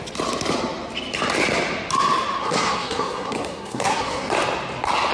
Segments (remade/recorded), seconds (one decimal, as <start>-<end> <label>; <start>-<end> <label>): 0.0-2.4 recorded; 2.4-4.3 remade; 4.3-5.1 recorded